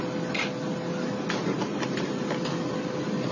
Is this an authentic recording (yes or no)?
yes